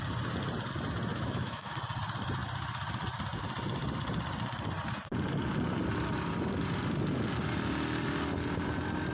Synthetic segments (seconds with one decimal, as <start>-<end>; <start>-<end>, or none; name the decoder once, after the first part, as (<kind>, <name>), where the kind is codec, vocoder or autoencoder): 1.1-1.7 (autoencoder, DAC-VAE)